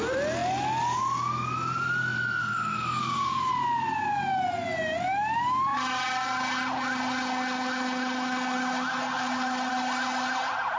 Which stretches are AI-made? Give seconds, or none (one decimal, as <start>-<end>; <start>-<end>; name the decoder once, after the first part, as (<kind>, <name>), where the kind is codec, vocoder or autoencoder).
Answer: 2.4-3.5 (codec, DAC)